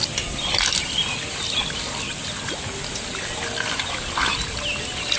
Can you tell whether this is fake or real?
real